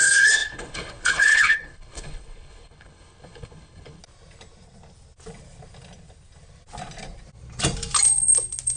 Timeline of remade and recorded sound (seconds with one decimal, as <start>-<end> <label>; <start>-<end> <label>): 0.0-4.0 remade; 4.0-8.8 recorded